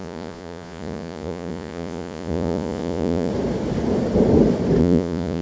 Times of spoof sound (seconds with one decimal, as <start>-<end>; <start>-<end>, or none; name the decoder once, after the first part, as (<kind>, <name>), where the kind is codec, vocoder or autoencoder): 0.0-3.3 (vocoder, Vocos); 4.8-5.4